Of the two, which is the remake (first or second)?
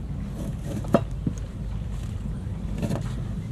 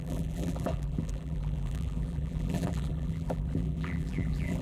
second